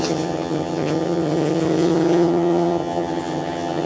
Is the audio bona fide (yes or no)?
no